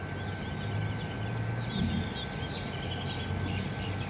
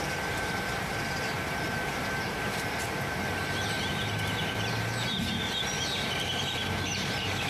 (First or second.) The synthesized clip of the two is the second